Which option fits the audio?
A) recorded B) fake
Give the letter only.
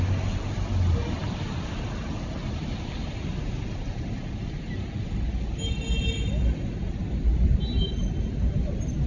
A